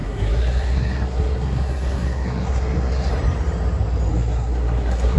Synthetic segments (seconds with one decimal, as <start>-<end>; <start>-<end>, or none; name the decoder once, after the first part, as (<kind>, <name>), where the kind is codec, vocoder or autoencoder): 0.0-3.1 (codec, SNAC); 4.1-5.2